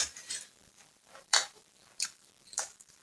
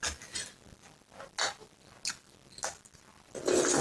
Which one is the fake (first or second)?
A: first